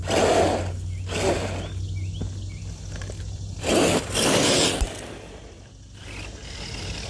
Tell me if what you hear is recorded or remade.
recorded